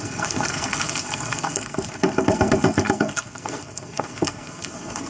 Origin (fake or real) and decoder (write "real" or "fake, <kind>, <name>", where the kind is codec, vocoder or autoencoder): fake, codec, SNAC